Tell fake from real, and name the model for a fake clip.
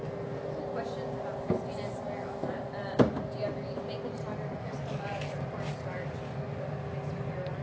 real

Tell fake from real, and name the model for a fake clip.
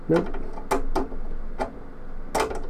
real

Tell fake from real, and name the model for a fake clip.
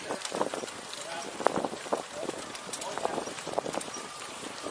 fake, vocoder, BigVGAN v2